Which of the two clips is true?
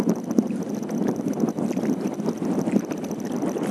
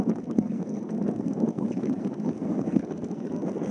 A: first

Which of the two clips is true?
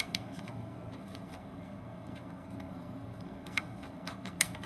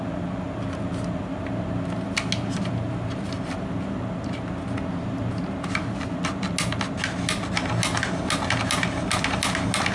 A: second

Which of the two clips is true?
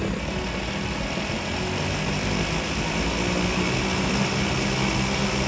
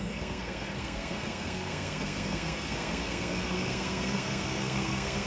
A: first